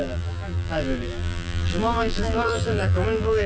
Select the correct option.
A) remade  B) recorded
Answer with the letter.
A